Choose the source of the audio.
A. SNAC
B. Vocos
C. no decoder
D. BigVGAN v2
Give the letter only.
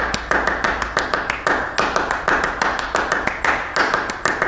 C